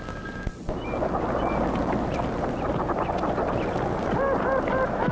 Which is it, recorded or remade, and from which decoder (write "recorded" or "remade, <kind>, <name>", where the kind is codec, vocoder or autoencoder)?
recorded